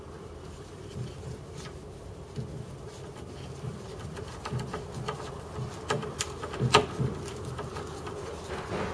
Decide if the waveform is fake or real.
real